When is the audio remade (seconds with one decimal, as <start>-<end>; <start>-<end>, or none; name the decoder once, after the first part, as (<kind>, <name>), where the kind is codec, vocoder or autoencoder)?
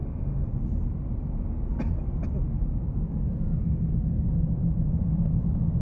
0.0-0.5 (autoencoder, DAC-VAE)